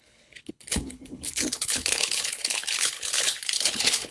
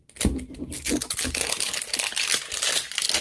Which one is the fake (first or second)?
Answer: first